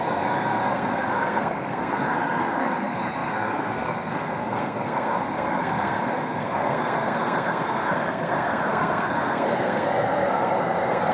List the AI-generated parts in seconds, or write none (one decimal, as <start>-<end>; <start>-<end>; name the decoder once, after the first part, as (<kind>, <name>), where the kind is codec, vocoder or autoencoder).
0.0-11.1 (codec, SNAC)